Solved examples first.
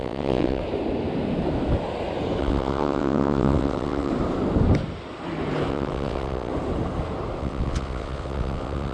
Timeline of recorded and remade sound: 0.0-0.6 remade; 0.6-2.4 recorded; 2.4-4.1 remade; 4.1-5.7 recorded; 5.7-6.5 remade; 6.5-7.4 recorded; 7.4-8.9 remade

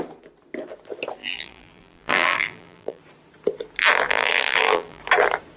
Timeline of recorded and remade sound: 0.0-1.2 recorded; 1.2-3.0 remade; 3.0-4.1 recorded; 4.1-5.0 remade; 5.0-5.6 recorded

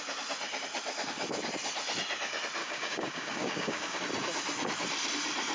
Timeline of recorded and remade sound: 0.0-2.6 recorded; 2.6-4.0 remade; 4.0-5.5 recorded

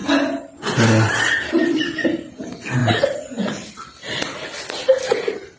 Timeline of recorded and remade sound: 0.0-5.6 recorded

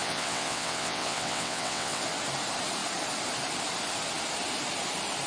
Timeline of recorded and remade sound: 0.0-2.0 remade; 2.0-5.3 recorded

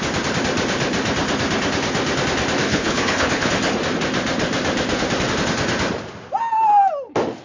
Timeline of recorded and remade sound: 0.0-2.7 recorded; 2.7-3.5 remade; 3.5-7.4 recorded

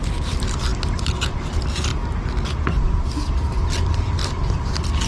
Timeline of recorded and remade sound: 0.0-1.9 remade; 1.9-3.7 recorded; 3.7-4.2 remade; 4.2-5.1 recorded

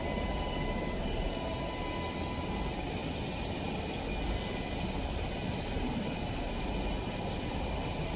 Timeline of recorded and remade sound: 0.0-8.2 recorded